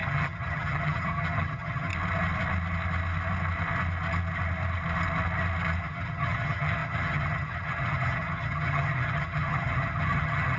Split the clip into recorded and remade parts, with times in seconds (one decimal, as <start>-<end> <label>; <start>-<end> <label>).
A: 0.0-1.9 remade; 1.9-5.8 recorded; 5.8-10.6 remade

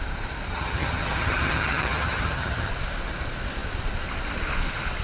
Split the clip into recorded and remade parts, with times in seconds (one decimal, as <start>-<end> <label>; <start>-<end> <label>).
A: 0.0-0.5 recorded; 0.5-2.7 remade; 2.7-5.0 recorded